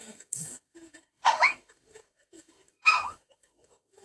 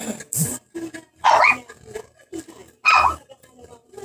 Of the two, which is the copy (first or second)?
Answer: first